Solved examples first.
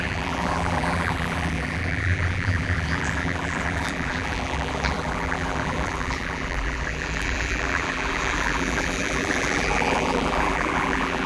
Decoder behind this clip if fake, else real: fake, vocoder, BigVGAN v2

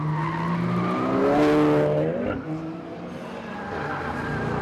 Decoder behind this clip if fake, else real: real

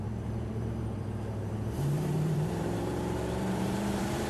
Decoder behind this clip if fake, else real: fake, vocoder, BigVGAN v2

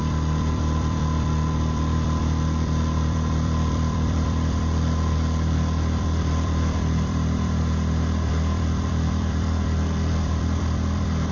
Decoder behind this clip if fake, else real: fake, vocoder, BigVGAN v2